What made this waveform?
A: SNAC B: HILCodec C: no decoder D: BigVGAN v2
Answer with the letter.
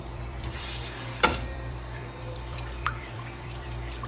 D